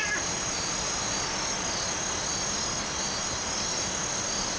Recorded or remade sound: recorded